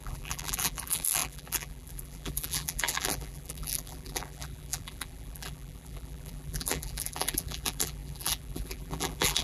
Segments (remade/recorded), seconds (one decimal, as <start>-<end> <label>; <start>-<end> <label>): 0.0-9.4 remade